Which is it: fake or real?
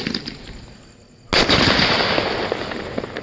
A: real